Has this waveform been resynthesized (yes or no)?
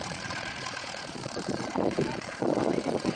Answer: yes